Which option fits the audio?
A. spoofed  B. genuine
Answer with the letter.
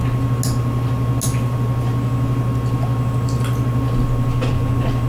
B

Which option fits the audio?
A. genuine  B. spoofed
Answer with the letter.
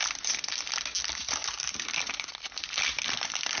A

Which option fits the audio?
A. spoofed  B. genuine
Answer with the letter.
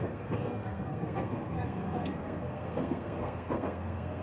A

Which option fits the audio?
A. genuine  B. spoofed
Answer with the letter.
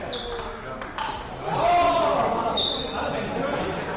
A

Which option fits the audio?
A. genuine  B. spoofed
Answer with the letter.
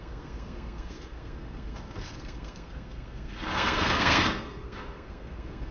B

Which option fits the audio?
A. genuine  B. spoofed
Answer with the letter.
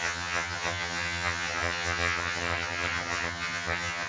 B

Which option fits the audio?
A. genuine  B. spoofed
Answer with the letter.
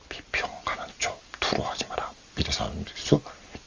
A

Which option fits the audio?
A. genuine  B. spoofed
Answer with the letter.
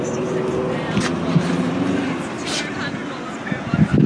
A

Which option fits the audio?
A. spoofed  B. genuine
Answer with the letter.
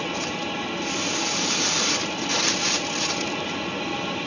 B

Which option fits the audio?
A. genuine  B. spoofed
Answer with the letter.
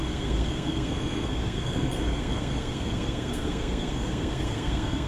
B